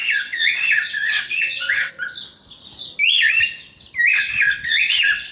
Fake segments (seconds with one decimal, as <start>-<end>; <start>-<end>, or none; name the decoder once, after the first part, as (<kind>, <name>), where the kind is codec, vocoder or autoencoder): 0.0-1.9 (vocoder, WaveNeXt); 4.1-5.3